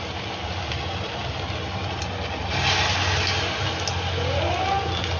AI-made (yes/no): no